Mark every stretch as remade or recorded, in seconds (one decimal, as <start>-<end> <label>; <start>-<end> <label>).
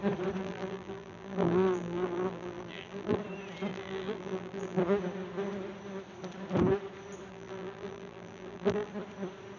0.0-0.4 recorded; 0.4-3.2 remade; 3.2-3.7 recorded; 3.7-4.8 remade; 4.8-7.3 recorded; 7.3-8.9 remade; 8.9-9.6 recorded